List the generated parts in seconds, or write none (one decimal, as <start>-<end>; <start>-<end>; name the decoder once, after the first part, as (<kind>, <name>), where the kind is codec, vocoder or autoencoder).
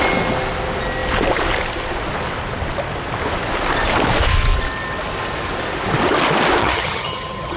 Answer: 6.6-7.6 (vocoder, HiFi-GAN)